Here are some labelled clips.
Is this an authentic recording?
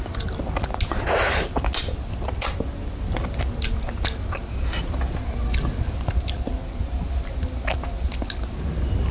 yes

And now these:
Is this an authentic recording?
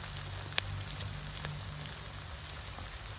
yes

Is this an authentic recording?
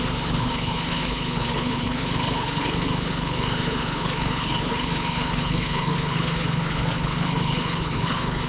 no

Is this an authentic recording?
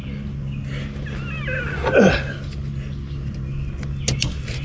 yes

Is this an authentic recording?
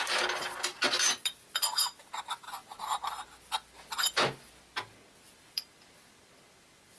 yes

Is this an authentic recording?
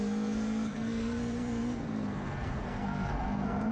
no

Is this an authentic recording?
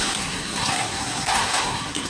no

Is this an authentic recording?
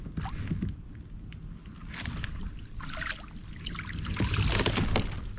yes